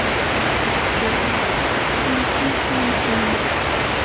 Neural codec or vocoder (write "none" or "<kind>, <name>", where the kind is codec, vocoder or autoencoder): none